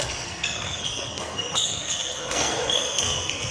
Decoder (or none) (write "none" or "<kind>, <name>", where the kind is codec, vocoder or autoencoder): codec, SNAC